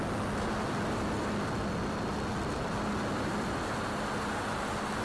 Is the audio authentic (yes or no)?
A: yes